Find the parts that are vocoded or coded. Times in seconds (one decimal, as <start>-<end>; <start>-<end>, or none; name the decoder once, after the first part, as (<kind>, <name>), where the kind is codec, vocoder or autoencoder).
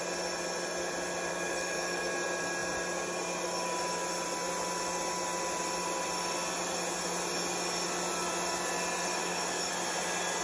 1.3-2.1 (codec, DAC); 9.2-9.7